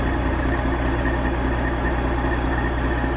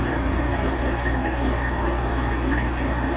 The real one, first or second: first